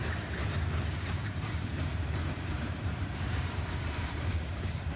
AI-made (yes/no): yes